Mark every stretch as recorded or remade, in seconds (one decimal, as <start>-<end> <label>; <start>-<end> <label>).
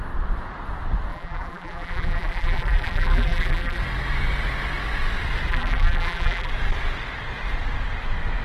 0.0-1.1 recorded; 1.1-3.8 remade; 3.8-5.5 recorded; 5.5-6.5 remade; 6.5-8.4 recorded